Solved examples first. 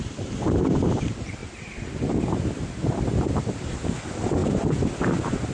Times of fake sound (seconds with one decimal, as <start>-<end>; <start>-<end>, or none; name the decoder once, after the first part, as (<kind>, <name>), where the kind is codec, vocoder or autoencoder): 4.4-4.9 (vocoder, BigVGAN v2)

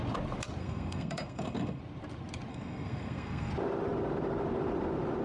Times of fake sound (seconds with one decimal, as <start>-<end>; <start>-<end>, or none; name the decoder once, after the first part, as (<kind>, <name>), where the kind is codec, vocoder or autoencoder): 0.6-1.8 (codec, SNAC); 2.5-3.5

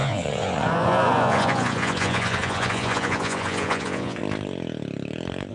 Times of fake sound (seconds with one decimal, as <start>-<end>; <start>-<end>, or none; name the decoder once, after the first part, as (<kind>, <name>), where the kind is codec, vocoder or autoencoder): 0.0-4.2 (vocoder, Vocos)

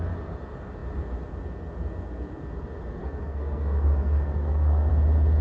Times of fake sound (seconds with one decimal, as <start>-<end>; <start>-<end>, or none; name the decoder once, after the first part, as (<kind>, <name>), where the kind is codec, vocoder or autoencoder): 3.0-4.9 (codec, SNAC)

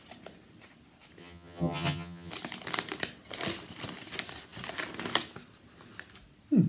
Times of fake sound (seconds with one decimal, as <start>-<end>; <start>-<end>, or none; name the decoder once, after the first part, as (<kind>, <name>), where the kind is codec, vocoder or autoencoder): 1.2-2.3 (vocoder, HiFi-GAN)

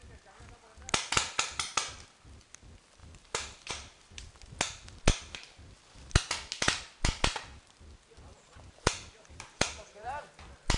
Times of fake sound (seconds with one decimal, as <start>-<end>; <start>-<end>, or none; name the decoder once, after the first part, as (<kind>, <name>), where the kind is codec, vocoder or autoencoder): 3.0-3.7 (vocoder, BigVGAN v2); 8.3-10.1